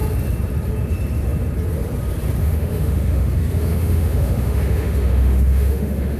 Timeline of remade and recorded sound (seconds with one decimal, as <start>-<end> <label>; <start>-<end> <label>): 0.0-2.4 recorded; 2.4-6.2 remade